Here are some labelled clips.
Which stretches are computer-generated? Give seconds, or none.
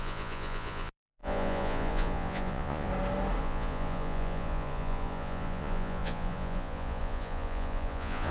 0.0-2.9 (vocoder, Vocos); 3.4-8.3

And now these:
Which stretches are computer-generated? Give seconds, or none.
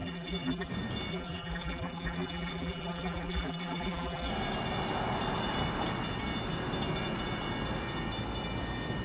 0.0-0.7 (vocoder, BigVGAN v2); 1.1-4.3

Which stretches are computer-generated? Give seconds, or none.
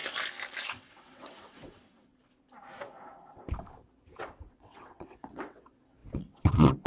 0.7-2.1 (vocoder, WaveNeXt); 4.2-6.9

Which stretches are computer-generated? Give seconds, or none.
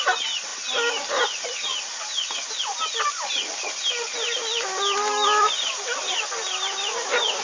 none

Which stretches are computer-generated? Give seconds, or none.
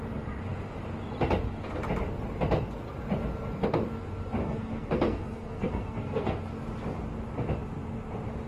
4.4-6.4 (codec, SNAC)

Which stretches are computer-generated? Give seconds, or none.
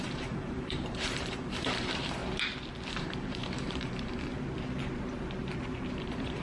0.0-2.2 (vocoder, BigVGAN v2); 2.9-4.3; 5.9-6.4